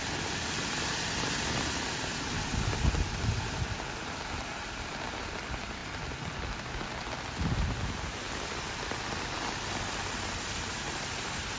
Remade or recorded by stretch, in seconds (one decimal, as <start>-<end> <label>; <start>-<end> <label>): 0.0-11.6 recorded